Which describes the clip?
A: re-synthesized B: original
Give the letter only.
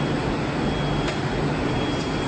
B